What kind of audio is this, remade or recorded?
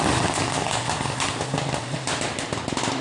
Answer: recorded